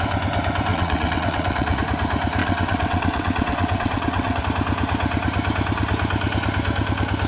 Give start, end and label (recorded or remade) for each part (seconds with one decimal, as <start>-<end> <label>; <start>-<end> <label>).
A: 0.0-0.7 recorded; 0.7-1.8 remade; 1.8-2.4 recorded; 2.4-4.4 remade; 4.4-7.3 recorded